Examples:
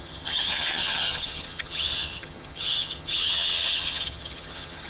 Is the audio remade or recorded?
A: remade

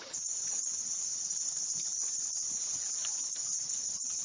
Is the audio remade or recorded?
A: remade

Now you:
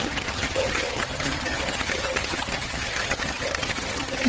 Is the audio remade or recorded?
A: remade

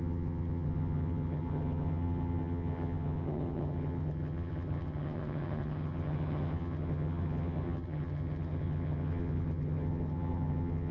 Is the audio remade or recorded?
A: remade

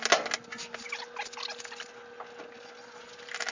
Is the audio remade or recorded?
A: recorded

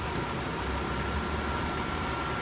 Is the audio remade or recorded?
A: recorded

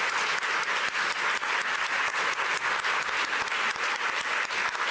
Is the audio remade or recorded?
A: recorded